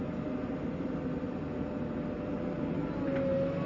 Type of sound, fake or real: real